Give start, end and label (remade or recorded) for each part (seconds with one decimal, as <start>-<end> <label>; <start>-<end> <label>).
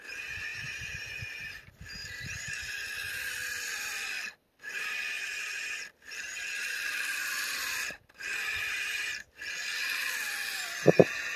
0.0-0.5 recorded; 0.5-1.7 remade; 1.7-11.4 recorded